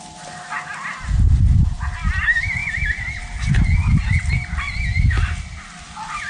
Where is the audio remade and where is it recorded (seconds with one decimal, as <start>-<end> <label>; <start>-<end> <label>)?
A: 0.0-6.3 recorded